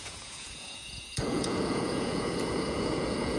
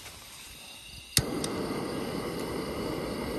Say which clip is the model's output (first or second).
first